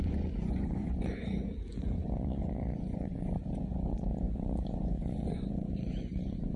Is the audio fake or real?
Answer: fake